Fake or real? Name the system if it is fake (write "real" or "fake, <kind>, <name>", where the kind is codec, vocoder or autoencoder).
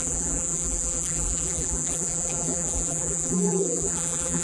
fake, vocoder, BigVGAN v2